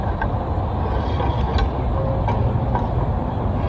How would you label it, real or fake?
real